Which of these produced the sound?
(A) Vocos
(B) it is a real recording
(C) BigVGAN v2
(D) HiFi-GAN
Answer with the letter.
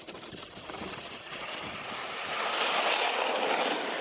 B